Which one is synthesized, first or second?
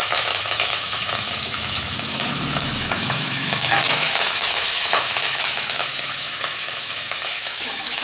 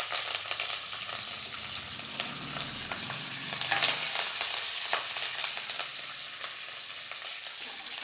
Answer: first